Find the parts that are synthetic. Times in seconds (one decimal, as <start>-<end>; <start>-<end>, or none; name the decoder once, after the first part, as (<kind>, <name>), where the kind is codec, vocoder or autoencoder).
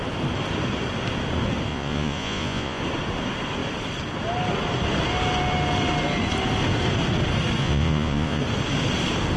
1.7-2.8 (vocoder, Vocos); 7.6-8.4